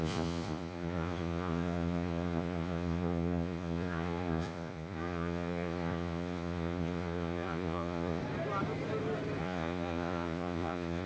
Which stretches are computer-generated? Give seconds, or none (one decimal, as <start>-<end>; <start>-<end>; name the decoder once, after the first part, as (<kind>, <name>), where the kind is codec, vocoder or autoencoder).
0.0-8.2 (vocoder, Vocos); 9.4-11.1